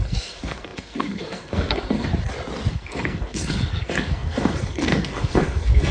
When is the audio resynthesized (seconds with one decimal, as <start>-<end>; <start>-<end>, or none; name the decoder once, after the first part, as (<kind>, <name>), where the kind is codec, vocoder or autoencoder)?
0.0-2.1 (codec, SNAC); 2.7-5.9